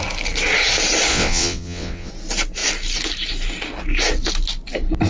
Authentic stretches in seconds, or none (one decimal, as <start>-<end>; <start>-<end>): 0.0-1.1; 2.1-5.1